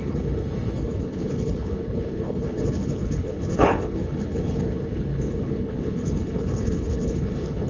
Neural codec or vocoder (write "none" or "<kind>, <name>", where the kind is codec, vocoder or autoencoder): codec, HILCodec